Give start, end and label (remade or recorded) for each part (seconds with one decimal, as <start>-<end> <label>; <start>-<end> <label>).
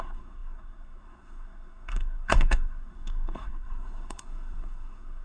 0.0-5.2 remade